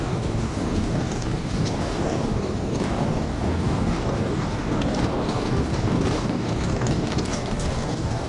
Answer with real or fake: fake